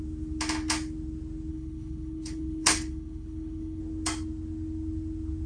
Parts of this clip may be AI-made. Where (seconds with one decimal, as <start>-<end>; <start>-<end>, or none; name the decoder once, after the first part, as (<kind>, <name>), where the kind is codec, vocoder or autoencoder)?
1.5-3.8 (codec, HILCodec)